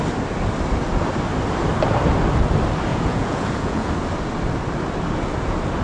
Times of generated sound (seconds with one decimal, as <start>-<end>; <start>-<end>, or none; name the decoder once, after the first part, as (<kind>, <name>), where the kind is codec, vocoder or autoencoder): 2.9-3.9 (vocoder, Vocos)